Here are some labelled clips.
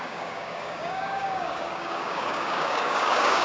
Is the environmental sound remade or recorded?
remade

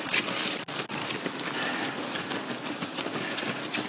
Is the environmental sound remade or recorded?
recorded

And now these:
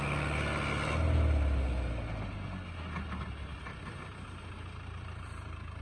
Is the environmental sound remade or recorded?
recorded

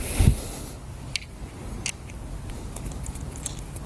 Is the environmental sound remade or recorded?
recorded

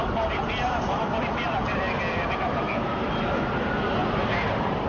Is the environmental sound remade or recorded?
remade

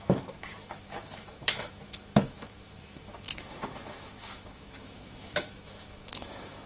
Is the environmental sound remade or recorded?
remade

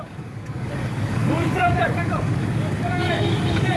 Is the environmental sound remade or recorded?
remade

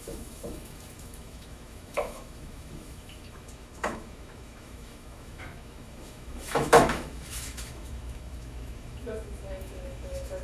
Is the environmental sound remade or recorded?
remade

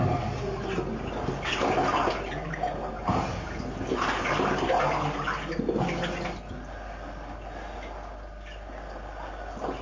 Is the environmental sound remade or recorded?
recorded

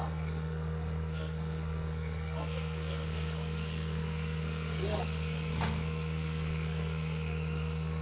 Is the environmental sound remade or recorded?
remade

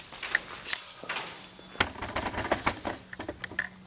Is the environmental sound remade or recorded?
recorded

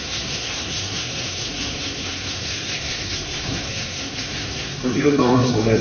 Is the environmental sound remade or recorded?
remade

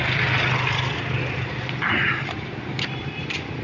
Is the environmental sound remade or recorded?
recorded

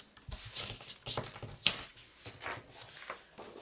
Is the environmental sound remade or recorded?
recorded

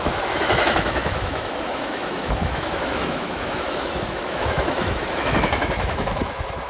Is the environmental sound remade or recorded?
remade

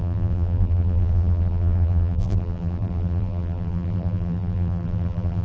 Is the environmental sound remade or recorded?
remade